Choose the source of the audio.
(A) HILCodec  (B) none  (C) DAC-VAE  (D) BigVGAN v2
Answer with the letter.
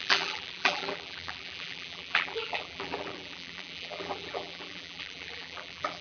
D